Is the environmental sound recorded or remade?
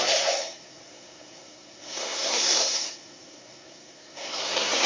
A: remade